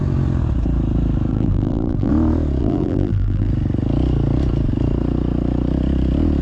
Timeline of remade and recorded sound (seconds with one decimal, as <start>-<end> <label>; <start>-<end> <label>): 0.0-1.3 recorded; 1.3-2.1 remade; 2.1-2.6 recorded; 2.6-3.5 remade; 3.5-6.4 recorded